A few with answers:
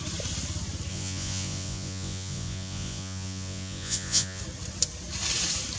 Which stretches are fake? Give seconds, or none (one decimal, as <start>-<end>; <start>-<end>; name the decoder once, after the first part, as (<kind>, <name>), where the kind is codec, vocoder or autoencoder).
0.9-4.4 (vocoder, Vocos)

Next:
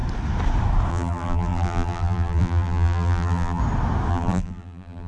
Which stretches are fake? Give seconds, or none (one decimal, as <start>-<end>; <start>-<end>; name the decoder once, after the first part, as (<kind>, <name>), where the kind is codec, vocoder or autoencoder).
0.9-3.6 (vocoder, BigVGAN v2); 4.1-5.1

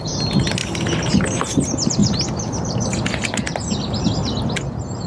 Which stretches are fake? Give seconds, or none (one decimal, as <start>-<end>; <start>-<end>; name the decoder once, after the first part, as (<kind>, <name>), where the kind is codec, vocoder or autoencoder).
none